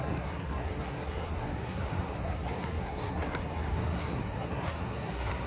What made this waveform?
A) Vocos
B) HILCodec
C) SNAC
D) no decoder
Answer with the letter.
C